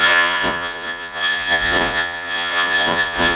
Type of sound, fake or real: fake